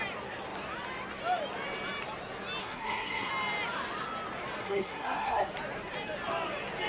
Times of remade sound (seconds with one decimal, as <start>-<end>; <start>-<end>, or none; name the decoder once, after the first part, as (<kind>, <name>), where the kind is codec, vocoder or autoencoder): 2.6-3.3 (codec, SNAC); 4.6-5.5